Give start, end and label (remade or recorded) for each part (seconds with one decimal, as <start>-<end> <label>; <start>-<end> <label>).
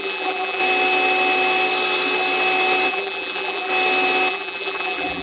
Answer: 0.0-0.6 remade; 0.6-2.9 recorded; 2.9-3.7 remade; 3.7-4.3 recorded; 4.3-5.2 remade